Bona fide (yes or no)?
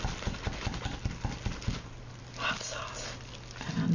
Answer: yes